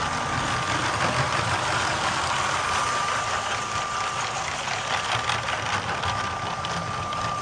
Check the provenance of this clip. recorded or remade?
recorded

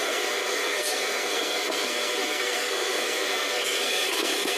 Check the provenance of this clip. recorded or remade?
remade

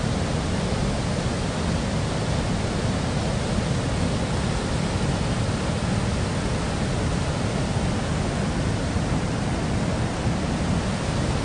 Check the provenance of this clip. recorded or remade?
recorded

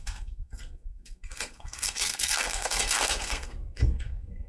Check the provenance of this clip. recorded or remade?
remade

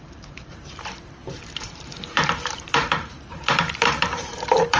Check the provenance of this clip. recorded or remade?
remade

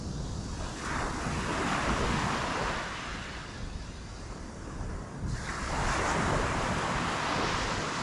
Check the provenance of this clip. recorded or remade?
recorded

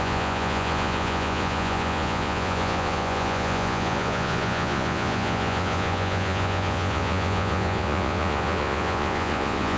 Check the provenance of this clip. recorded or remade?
remade